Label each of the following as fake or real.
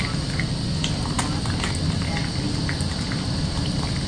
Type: real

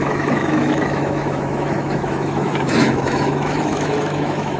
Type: fake